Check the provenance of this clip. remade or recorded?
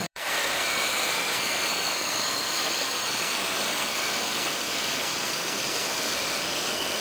remade